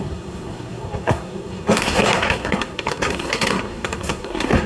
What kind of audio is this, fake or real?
fake